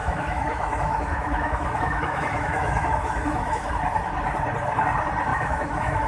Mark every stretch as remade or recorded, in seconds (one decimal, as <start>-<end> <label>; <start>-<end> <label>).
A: 0.0-3.7 remade; 3.7-5.3 recorded; 5.3-6.1 remade